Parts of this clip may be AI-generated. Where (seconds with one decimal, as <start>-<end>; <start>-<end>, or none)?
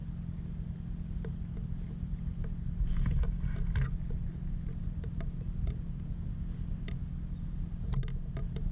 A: none